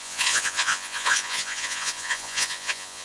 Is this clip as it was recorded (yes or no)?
no